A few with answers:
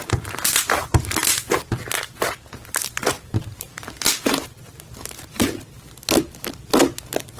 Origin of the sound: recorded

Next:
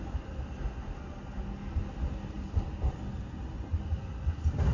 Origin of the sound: recorded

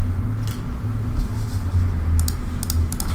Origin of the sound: recorded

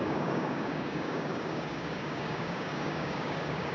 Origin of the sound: remade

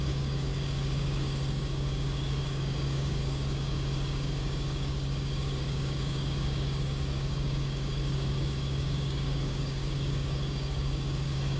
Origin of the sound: remade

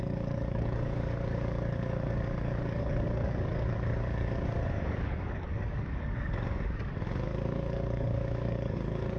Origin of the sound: remade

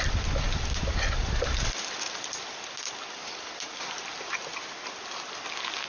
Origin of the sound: recorded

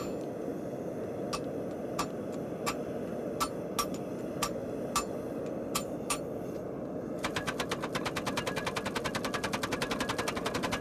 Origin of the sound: recorded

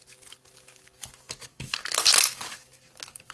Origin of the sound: remade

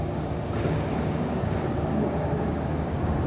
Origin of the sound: remade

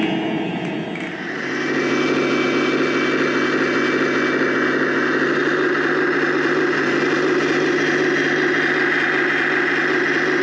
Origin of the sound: recorded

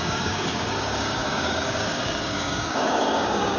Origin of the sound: remade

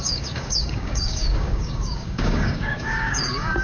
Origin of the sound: remade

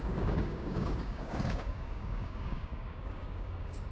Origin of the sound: remade